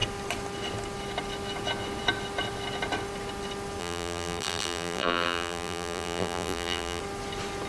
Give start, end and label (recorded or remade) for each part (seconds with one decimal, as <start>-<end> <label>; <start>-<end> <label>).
0.0-3.8 recorded; 3.8-7.0 remade; 7.0-7.7 recorded